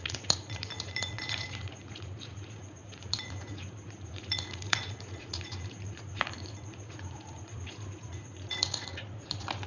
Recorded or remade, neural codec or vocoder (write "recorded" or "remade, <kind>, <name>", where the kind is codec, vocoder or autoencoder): remade, vocoder, Vocos